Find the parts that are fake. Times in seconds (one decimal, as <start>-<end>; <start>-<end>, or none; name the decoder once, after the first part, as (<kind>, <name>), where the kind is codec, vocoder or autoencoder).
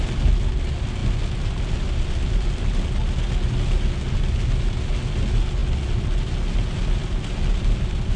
none